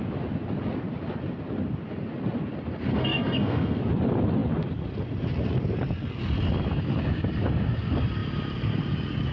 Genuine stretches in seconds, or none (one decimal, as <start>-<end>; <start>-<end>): 0.0-2.9; 3.8-9.3